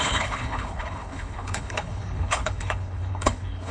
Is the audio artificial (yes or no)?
yes